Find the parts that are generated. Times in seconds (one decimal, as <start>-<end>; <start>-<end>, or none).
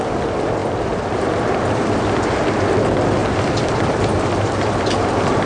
0.6-2.7; 3.2-5.5